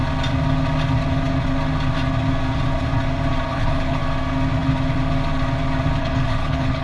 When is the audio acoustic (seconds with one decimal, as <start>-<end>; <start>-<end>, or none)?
0.0-3.5; 4.0-6.0